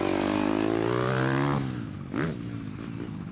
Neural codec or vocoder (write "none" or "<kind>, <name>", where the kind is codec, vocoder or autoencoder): none